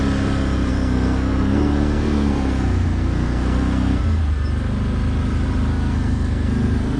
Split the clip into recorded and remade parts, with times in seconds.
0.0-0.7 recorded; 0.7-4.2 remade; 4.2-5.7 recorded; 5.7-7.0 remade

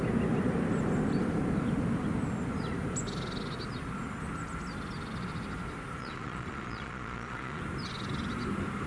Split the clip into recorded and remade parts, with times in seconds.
0.0-6.0 recorded; 6.0-7.6 remade; 7.6-8.9 recorded

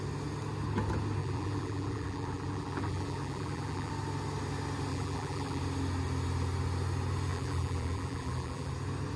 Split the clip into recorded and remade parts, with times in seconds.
0.0-1.2 recorded; 1.2-3.9 remade; 3.9-4.9 recorded; 4.9-5.6 remade; 5.6-7.3 recorded; 7.3-8.7 remade; 8.7-9.2 recorded

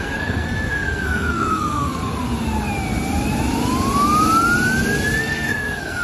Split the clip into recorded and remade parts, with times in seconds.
0.0-2.0 remade; 2.0-5.2 recorded; 5.2-6.0 remade

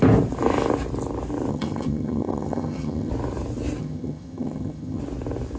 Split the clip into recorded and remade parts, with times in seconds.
0.0-1.5 recorded; 1.5-3.1 remade; 3.1-3.8 recorded; 3.8-5.0 remade; 5.0-5.6 recorded

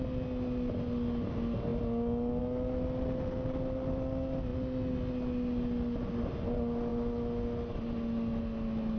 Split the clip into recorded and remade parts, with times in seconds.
0.0-9.0 recorded